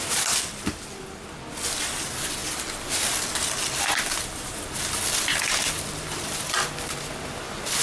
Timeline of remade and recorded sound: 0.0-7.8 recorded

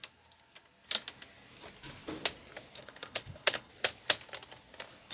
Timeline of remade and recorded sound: 0.0-2.8 recorded; 2.8-3.7 remade; 3.7-5.1 recorded

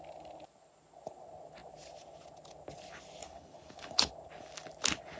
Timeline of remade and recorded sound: 0.0-3.2 recorded; 3.2-4.1 remade; 4.1-5.2 recorded

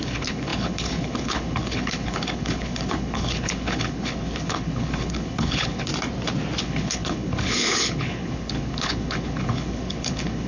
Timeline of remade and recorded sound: 0.0-5.9 remade; 5.9-6.6 recorded; 6.6-10.5 remade

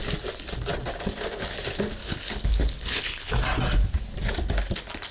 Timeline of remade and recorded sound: 0.0-2.0 recorded; 2.0-3.3 remade; 3.3-5.1 recorded

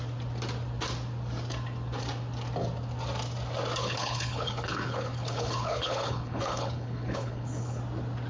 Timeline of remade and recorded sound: 0.0-3.8 recorded; 3.8-7.8 remade; 7.8-8.3 recorded